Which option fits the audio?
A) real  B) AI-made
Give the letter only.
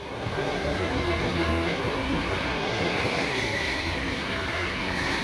B